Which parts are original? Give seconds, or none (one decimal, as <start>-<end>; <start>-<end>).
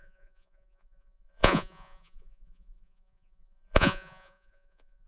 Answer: none